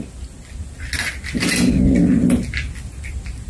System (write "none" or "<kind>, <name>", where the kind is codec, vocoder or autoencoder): none